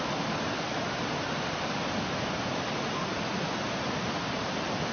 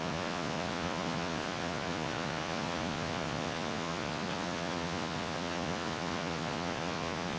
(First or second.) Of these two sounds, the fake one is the second